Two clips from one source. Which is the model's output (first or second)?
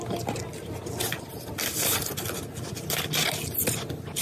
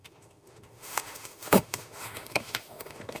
second